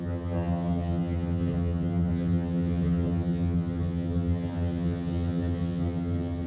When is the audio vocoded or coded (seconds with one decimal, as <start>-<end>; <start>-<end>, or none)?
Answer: 0.0-6.5

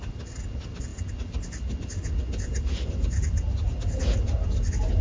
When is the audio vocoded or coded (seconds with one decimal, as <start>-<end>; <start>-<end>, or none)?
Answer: none

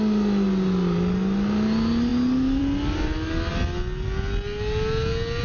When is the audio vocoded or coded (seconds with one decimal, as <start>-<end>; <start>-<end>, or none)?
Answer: none

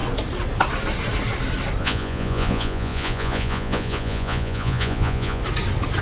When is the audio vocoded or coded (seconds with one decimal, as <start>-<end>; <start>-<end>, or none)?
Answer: 1.8-5.4

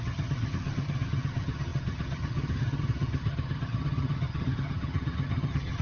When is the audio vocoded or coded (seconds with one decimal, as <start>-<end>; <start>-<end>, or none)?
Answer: 0.0-5.8

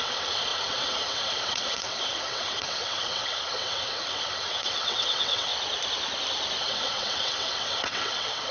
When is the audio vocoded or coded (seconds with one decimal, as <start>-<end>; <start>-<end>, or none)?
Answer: 0.0-5.5; 6.6-8.5

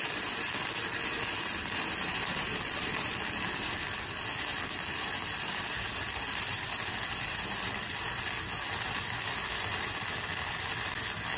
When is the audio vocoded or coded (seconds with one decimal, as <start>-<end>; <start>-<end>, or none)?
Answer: 1.6-2.5

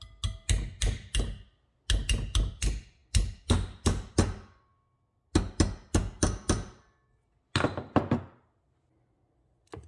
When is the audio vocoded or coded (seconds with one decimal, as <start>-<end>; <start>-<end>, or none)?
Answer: none